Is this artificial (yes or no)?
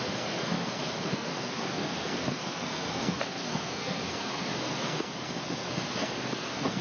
yes